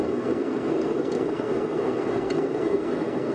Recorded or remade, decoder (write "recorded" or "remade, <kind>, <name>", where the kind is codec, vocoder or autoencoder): remade, codec, SNAC